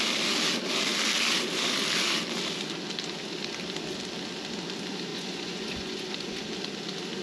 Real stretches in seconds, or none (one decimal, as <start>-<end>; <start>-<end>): 0.0-5.1; 6.4-7.2